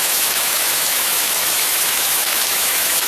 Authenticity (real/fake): fake